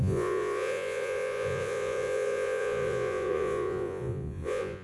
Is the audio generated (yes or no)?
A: yes